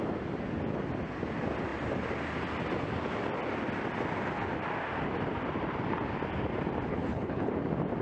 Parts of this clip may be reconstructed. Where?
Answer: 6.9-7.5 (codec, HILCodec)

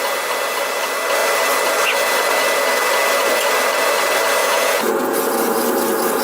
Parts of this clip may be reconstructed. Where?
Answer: 4.4-5.3 (vocoder, Vocos)

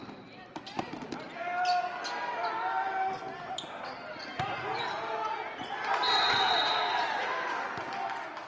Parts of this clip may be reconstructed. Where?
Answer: none

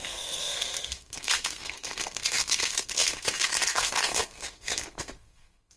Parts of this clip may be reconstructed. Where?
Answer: 0.0-5.8 (codec, SNAC)

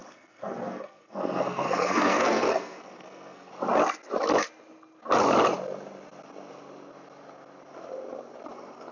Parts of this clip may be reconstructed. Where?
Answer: 0.0-3.5 (codec, SNAC)

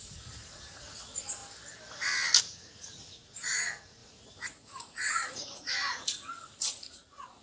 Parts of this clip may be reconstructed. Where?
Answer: 0.0-1.4 (vocoder, Vocos); 2.4-7.4

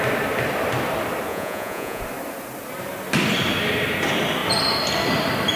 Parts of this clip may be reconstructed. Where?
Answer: 1.3-2.0 (vocoder, Vocos)

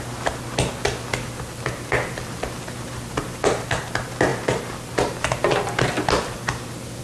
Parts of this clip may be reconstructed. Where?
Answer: none